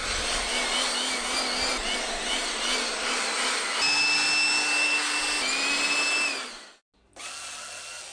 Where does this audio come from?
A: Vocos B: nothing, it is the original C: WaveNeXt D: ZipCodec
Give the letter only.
B